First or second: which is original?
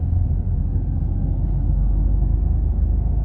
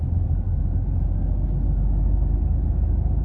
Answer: second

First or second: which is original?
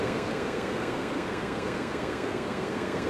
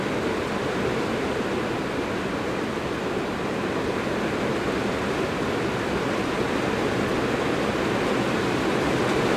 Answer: second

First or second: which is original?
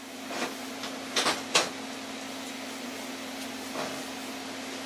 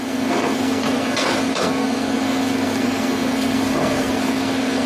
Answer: first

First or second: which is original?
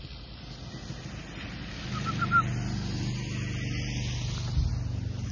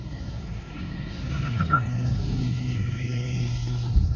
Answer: first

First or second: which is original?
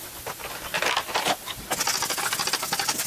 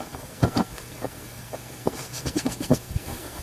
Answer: first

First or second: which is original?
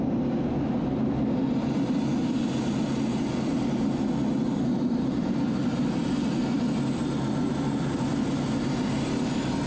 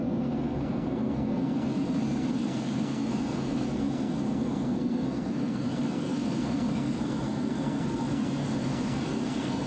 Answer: first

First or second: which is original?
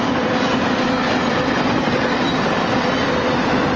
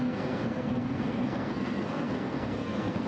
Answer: first